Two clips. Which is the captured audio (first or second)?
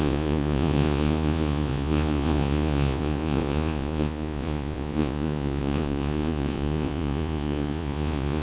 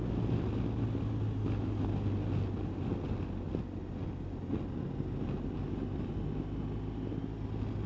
second